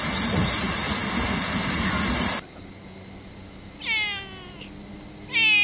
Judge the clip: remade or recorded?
recorded